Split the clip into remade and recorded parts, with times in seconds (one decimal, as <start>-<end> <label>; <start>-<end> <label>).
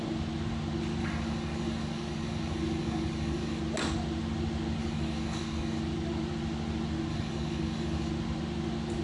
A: 0.0-1.0 recorded; 1.0-3.6 remade; 3.6-4.8 recorded; 4.8-5.8 remade; 5.8-7.1 recorded; 7.1-8.1 remade; 8.1-9.0 recorded